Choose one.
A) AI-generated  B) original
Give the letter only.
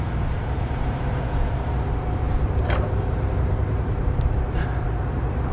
A